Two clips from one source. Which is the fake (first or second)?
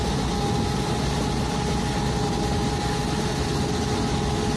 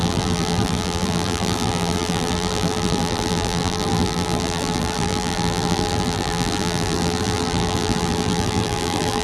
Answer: second